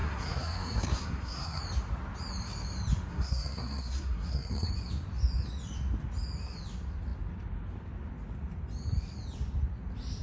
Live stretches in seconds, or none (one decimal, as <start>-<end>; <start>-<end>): 1.6-3.1; 4.7-10.2